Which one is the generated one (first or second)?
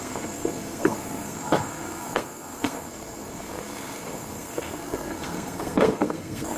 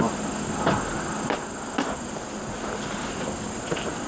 first